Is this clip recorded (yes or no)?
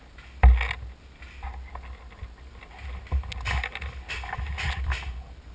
yes